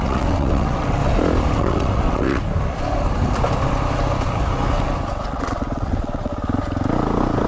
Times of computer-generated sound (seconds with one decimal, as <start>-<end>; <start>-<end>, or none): 0.0-1.0; 1.6-2.4; 5.2-6.3

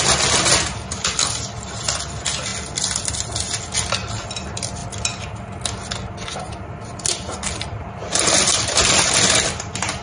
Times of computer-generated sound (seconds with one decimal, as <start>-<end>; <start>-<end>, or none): none

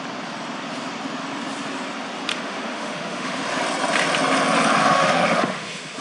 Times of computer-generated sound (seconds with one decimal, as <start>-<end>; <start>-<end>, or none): 2.3-3.4; 4.8-6.0

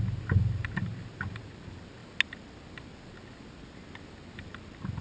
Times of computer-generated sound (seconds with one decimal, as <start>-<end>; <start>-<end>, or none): none

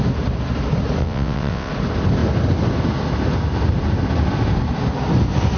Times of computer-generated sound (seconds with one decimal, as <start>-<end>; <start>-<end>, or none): 1.0-1.7

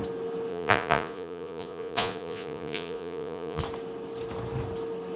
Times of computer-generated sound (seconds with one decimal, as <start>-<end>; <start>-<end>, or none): 0.5-3.6

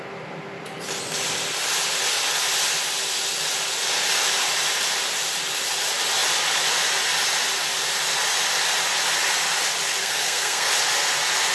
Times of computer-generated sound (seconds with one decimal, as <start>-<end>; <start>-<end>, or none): 10.0-10.7

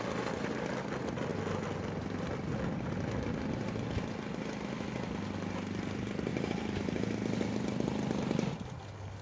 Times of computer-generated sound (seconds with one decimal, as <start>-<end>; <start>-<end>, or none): none